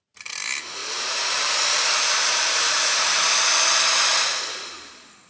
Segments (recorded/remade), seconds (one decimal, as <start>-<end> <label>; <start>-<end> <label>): 0.0-0.8 recorded; 0.8-3.1 remade; 3.1-5.3 recorded